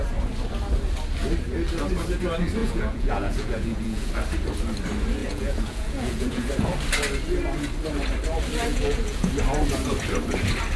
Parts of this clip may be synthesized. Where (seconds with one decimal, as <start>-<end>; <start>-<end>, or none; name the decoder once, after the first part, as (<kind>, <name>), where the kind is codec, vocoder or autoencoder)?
2.6-4.1 (vocoder, Vocos); 5.2-6.5; 8.7-9.3